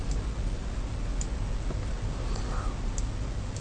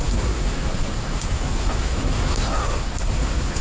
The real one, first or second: first